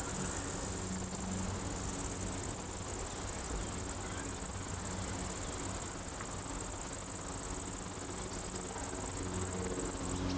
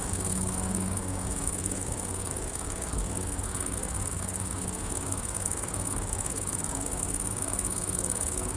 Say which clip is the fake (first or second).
second